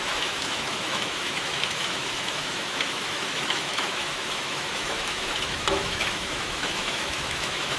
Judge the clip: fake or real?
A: fake